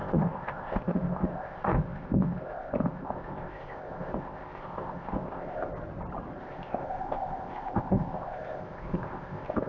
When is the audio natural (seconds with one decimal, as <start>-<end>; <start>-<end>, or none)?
5.7-6.4